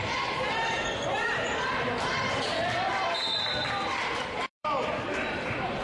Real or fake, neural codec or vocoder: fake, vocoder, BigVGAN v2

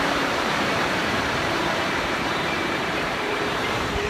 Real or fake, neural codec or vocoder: fake, vocoder, BigVGAN v2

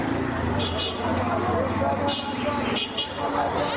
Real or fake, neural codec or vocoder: real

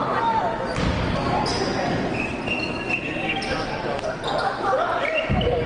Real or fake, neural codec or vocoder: real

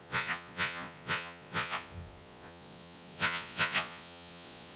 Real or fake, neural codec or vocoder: fake, vocoder, Vocos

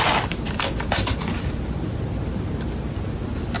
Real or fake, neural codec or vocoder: real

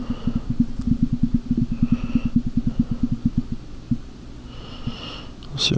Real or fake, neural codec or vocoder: real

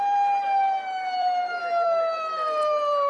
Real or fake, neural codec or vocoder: fake, vocoder, BigVGAN v2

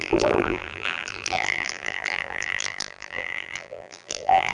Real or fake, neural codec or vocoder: fake, vocoder, BigVGAN v2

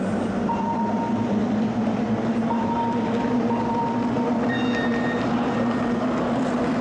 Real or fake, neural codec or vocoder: fake, vocoder, BigVGAN v2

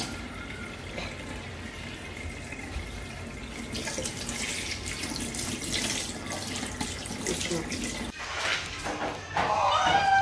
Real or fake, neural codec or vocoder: real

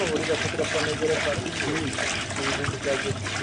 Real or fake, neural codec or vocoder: real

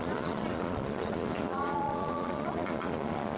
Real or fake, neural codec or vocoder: fake, vocoder, Vocos